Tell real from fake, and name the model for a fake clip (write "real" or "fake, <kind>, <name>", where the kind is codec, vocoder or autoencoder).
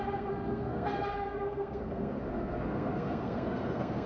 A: fake, codec, SNAC